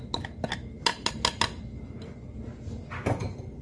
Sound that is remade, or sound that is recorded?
recorded